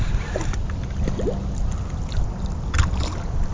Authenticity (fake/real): real